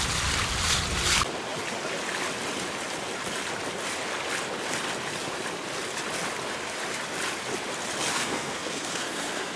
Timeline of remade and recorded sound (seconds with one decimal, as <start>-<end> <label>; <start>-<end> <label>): 0.0-8.1 recorded; 8.1-9.6 remade